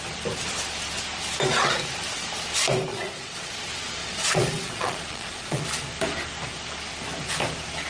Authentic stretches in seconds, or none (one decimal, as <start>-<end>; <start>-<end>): 0.0-2.9; 3.5-4.0; 5.6-7.9